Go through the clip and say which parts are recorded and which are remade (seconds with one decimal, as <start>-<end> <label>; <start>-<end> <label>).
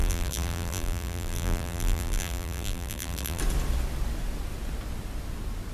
0.0-3.4 remade; 3.4-5.7 recorded